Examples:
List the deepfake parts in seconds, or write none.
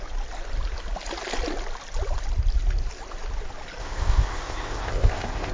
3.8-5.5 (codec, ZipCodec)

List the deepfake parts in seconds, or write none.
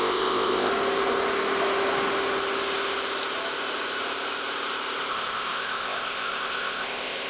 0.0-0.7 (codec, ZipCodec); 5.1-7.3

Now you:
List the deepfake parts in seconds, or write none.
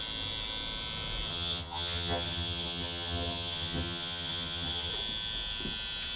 1.3-4.9 (vocoder, HiFi-GAN)